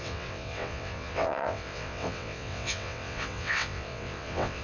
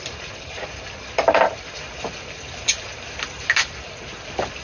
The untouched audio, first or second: second